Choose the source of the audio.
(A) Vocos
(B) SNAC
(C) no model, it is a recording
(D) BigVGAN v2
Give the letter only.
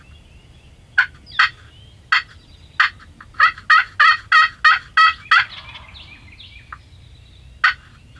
C